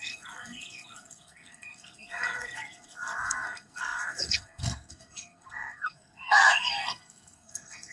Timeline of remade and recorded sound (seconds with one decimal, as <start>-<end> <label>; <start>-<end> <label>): 0.0-7.9 remade